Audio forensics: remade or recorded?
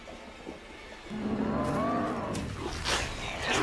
recorded